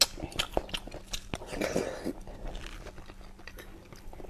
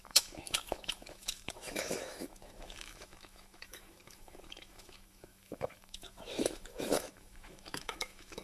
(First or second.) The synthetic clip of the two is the second